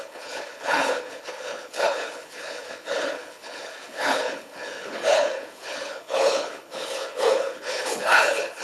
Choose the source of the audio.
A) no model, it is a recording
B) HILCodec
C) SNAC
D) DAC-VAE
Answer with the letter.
B